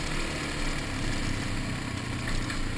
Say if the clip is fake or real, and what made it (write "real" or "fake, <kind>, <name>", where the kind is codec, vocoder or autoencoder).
real